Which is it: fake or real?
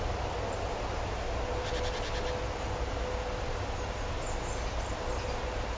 real